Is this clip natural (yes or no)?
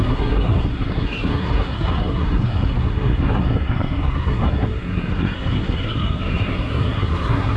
no